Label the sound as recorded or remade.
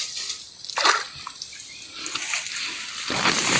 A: recorded